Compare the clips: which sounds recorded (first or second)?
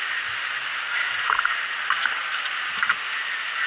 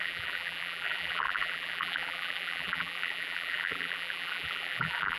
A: first